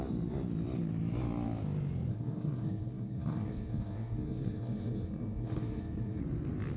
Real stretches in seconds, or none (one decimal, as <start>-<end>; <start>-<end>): 0.0-2.1; 6.2-6.8